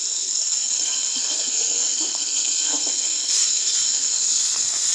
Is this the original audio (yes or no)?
no